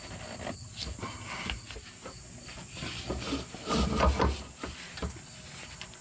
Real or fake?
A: real